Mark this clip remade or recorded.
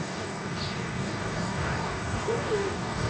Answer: remade